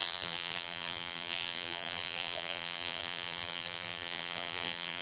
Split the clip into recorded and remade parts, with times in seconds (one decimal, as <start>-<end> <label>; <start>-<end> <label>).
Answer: 0.0-5.0 remade